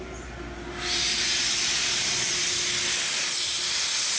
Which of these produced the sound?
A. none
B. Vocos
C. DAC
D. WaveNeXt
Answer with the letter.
A